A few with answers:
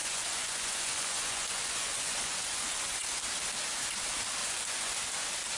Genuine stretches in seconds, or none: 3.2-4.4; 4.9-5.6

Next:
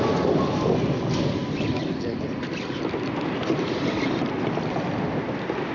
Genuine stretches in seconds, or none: 0.0-5.7

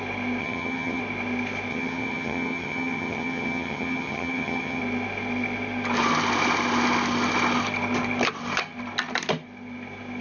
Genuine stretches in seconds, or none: 0.0-0.4; 1.0-1.7; 4.8-10.2

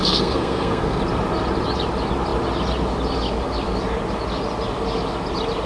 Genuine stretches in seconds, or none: 1.0-5.7

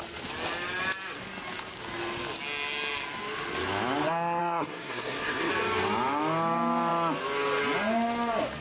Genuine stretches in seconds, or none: 0.0-4.4; 5.5-8.6